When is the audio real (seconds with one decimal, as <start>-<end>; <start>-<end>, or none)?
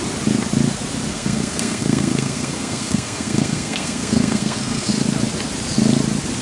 0.0-1.1; 4.9-6.4